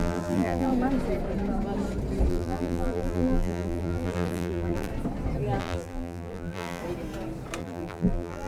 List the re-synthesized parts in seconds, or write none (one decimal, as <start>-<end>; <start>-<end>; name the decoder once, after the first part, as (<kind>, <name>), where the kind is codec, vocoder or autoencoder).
0.0-0.7 (vocoder, BigVGAN v2); 2.3-4.9; 5.6-6.8; 7.6-8.5